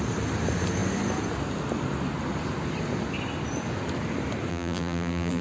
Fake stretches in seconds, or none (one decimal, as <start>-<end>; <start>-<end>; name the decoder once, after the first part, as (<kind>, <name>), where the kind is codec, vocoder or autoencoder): 4.5-5.4 (vocoder, BigVGAN v2)